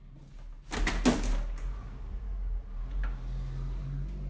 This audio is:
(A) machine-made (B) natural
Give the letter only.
B